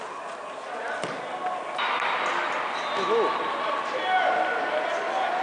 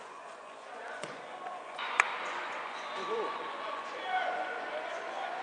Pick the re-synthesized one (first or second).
second